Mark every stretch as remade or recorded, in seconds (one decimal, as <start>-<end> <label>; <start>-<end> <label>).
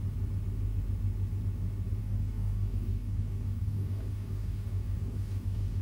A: 0.0-2.0 recorded; 2.0-5.8 remade